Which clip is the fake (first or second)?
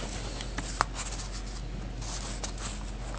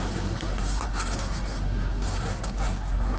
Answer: second